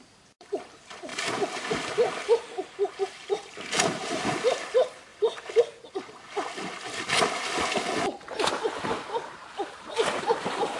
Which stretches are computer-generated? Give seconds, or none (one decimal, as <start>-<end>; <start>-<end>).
0.0-1.1; 2.9-5.1; 8.6-10.8